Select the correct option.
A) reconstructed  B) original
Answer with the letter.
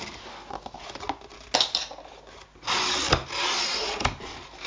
B